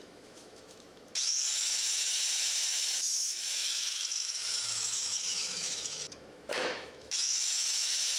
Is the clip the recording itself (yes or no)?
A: no